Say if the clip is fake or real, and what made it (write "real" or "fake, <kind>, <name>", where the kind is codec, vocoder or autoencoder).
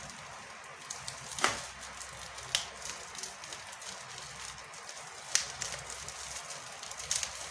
real